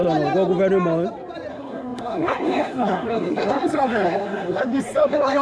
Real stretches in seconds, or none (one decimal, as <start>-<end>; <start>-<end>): 0.0-1.5